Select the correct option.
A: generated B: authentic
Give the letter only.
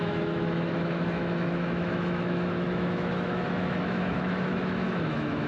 A